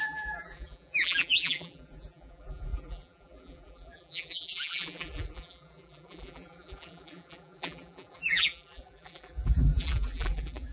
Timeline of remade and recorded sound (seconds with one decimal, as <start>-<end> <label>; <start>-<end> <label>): 0.0-10.7 remade